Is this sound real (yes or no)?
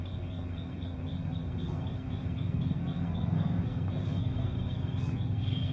no